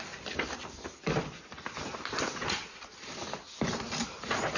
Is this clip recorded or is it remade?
remade